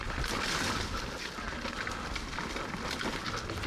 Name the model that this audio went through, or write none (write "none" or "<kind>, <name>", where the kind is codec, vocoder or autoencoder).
none